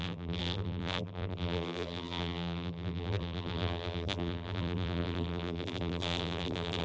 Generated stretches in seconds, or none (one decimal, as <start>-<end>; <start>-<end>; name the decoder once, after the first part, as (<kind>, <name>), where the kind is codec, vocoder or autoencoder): 0.0-6.8 (vocoder, BigVGAN v2)